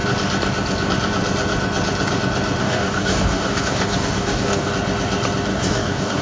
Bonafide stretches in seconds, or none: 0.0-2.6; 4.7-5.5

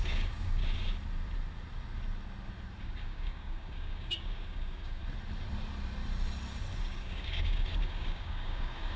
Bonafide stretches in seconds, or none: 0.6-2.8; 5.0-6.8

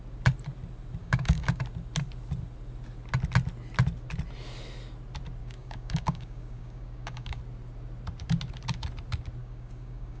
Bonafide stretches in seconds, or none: 0.0-1.0; 1.6-5.4; 7.4-9.4